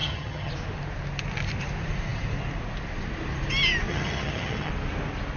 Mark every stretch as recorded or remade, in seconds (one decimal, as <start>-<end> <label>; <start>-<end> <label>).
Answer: 0.0-0.5 remade; 0.5-3.9 recorded; 3.9-4.7 remade; 4.7-5.4 recorded